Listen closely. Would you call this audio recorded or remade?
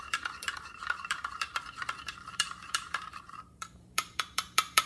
remade